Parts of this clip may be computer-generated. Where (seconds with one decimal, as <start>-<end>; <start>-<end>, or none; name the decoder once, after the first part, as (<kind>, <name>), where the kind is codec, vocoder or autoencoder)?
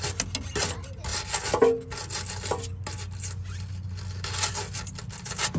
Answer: none